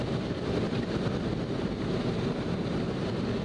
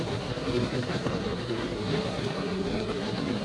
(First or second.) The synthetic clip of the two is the second